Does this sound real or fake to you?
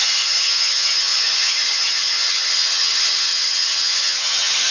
fake